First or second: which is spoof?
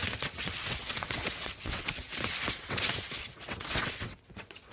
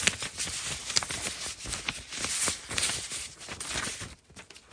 first